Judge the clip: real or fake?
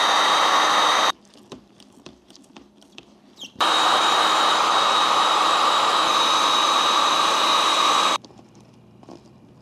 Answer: fake